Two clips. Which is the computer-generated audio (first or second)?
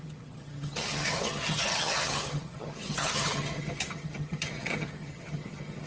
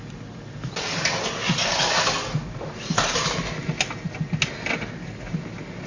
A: first